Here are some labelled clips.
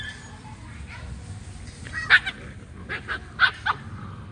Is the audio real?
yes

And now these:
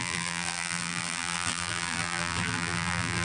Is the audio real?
no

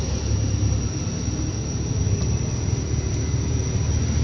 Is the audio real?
yes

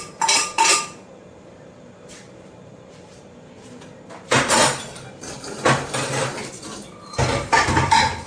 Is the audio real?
no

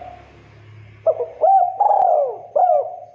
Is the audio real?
yes